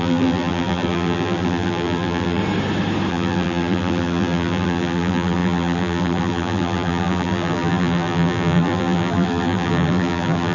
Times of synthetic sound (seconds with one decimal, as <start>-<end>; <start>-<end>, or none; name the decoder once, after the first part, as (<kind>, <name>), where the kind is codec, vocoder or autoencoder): 0.0-2.4 (vocoder, BigVGAN v2); 3.1-10.5